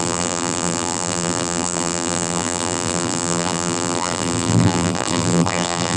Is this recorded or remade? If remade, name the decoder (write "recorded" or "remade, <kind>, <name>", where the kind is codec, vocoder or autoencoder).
remade, vocoder, BigVGAN v2